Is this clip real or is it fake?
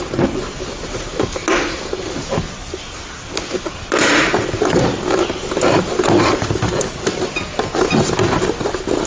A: real